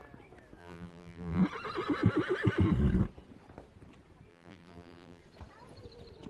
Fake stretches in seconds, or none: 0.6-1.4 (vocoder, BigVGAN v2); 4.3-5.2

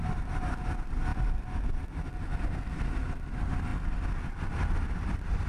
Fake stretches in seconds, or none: 0.0-1.1 (vocoder, BigVGAN v2); 2.4-3.7; 4.4-5.5

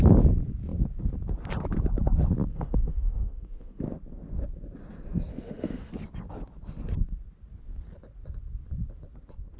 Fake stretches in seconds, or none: 2.5-3.8 (autoencoder, DAC-VAE); 5.3-5.9

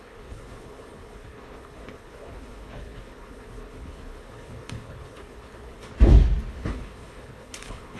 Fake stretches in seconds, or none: 0.0-5.9 (codec, HILCodec); 6.5-8.0

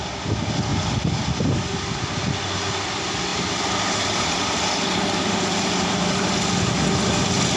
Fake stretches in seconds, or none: 3.3-6.3 (vocoder, BigVGAN v2)

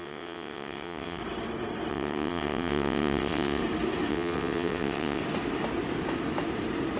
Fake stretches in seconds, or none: 0.0-1.2 (vocoder, WaveNeXt); 1.9-3.6; 4.1-5.2

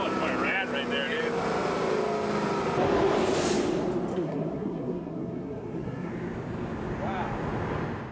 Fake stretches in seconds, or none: 4.1-6.1 (codec, SNAC)

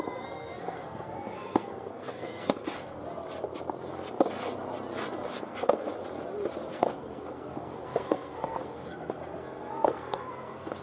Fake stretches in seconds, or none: 0.0-3.0 (codec, SNAC); 5.3-5.9; 6.7-10.8